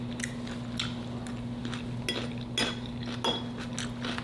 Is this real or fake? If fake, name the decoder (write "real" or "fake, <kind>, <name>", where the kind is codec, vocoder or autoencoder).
real